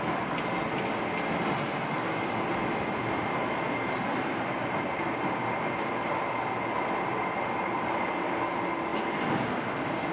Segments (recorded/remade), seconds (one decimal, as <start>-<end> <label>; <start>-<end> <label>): 0.0-10.1 recorded